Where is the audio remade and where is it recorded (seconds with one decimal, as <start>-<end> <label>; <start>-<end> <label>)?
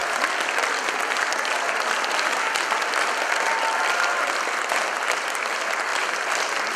0.0-6.8 recorded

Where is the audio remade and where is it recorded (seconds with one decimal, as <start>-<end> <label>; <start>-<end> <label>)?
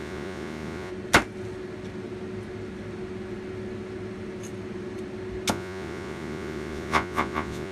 0.0-0.9 remade; 0.9-5.5 recorded; 5.5-7.7 remade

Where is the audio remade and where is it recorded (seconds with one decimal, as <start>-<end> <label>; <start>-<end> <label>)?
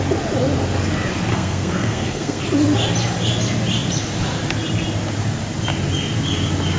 0.0-1.3 recorded; 1.3-2.4 remade; 2.4-6.8 recorded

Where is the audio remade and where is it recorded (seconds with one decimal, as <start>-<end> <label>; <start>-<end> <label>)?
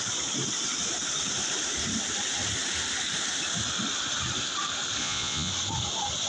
0.0-5.0 recorded; 5.0-5.5 remade; 5.5-6.3 recorded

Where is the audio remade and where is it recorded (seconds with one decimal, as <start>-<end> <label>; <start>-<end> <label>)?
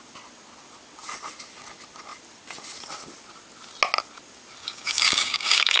0.0-4.6 recorded; 4.6-5.8 remade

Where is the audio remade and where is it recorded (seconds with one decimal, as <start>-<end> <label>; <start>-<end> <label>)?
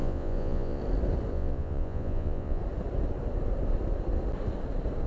0.0-0.8 remade; 0.8-1.3 recorded; 1.3-2.6 remade; 2.6-5.1 recorded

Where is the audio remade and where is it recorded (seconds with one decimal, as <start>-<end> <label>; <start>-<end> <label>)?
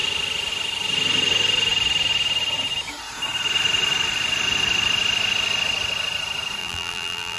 0.0-6.6 recorded; 6.6-7.4 remade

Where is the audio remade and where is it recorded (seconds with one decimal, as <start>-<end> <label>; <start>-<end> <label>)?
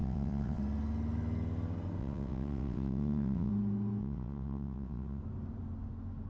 0.0-0.6 remade; 0.6-2.0 recorded; 2.0-3.5 remade; 3.5-4.0 recorded; 4.0-5.2 remade; 5.2-6.3 recorded